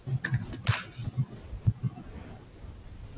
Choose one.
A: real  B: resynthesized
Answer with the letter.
A